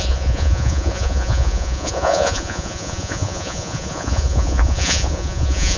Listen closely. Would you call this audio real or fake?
fake